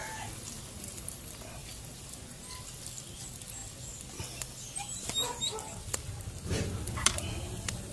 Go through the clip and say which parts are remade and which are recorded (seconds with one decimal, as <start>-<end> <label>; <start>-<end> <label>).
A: 0.0-7.9 recorded